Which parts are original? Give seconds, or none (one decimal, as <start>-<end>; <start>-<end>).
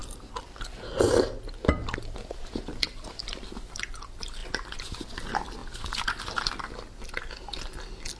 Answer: 0.0-8.2